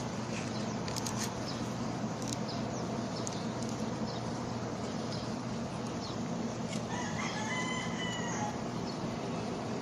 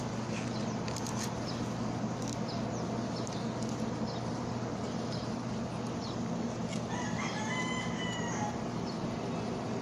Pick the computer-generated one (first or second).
first